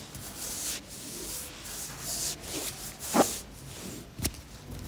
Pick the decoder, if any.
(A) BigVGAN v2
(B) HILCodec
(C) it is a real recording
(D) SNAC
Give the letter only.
C